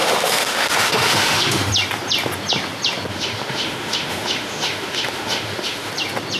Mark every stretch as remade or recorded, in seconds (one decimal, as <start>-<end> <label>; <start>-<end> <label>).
0.0-1.7 remade; 1.7-3.1 recorded; 3.1-5.9 remade; 5.9-6.4 recorded